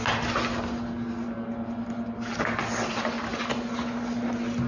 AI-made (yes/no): no